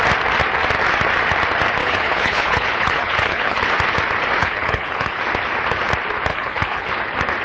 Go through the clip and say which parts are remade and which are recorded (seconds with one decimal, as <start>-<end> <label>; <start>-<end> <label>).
0.0-1.8 recorded; 1.8-3.6 remade; 3.6-4.4 recorded; 4.4-5.2 remade; 5.2-6.3 recorded; 6.3-6.9 remade; 6.9-7.4 recorded